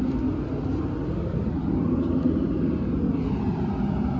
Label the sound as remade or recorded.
recorded